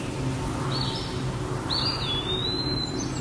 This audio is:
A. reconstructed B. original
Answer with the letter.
B